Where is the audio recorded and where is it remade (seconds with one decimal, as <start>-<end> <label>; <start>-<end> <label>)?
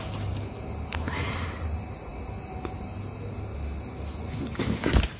0.0-5.2 recorded